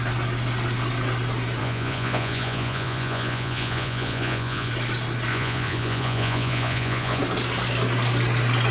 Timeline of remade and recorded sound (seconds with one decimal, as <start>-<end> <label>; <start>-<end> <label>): 0.0-1.6 recorded; 1.6-4.7 remade; 4.7-5.3 recorded; 5.3-7.2 remade; 7.2-8.7 recorded